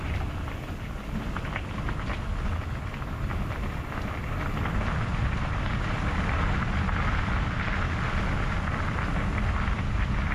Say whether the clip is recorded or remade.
recorded